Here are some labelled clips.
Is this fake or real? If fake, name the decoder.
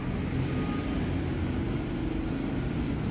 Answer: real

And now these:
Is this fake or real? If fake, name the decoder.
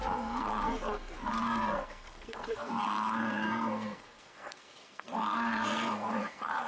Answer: fake, codec, SNAC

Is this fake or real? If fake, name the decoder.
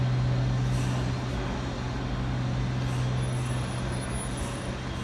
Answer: real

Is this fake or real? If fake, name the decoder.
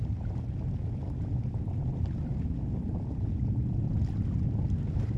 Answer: real